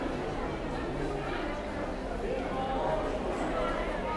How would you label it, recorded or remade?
recorded